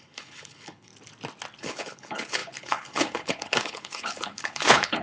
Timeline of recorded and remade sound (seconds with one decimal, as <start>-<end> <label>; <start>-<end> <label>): 0.0-0.9 remade; 0.9-1.6 recorded; 1.6-5.0 remade